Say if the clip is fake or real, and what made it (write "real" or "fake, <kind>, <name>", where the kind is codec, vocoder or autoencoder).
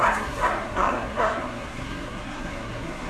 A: fake, codec, SNAC